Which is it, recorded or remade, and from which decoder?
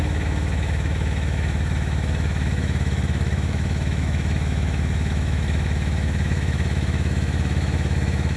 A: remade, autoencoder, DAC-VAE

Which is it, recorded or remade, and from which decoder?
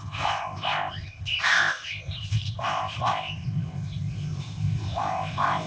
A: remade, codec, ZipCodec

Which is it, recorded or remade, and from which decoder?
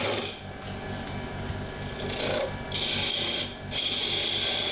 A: recorded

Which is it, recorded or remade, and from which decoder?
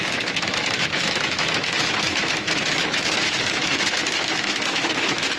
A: remade, autoencoder, DAC-VAE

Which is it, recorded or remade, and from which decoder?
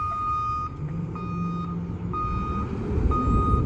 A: recorded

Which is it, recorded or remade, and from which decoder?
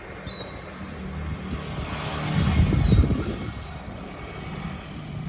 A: recorded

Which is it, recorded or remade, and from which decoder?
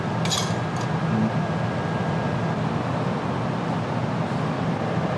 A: recorded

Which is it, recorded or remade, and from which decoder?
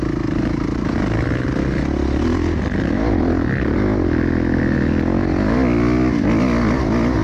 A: recorded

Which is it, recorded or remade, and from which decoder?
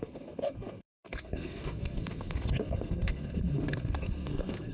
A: remade, codec, SNAC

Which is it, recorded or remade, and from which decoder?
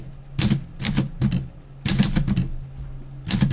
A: recorded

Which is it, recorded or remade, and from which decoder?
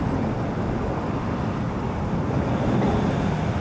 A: recorded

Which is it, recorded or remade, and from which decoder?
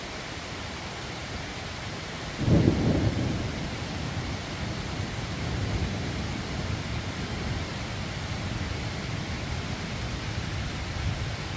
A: remade, vocoder, BigVGAN v2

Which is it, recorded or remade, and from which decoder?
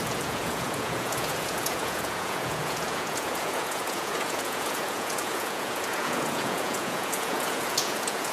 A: remade, vocoder, Vocos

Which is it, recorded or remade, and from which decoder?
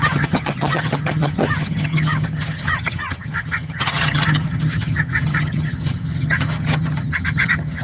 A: remade, vocoder, HiFi-GAN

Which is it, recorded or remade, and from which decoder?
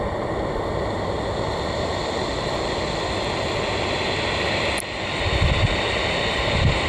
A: recorded